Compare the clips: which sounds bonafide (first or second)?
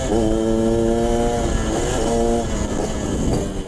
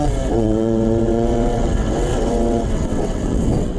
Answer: first